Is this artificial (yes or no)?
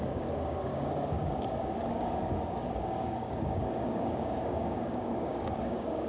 yes